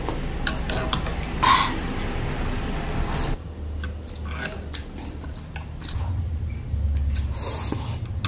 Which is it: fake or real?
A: real